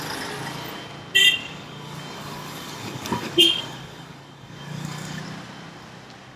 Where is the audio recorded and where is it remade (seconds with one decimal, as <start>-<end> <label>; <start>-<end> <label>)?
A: 0.0-1.4 recorded; 1.4-5.2 remade; 5.2-6.4 recorded